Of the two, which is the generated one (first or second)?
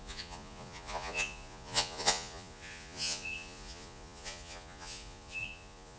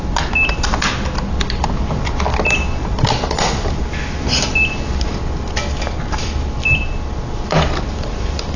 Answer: first